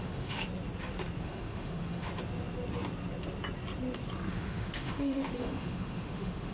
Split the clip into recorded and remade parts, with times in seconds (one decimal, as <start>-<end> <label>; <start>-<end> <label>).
0.0-0.4 remade; 0.4-1.2 recorded; 1.2-2.1 remade; 2.1-4.3 recorded; 4.3-6.5 remade